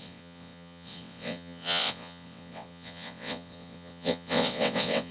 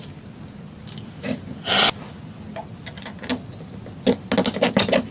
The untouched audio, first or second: second